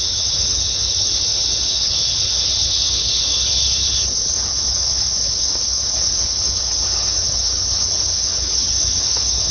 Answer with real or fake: fake